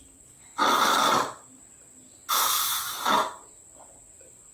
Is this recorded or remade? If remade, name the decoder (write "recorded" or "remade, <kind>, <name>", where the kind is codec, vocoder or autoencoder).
recorded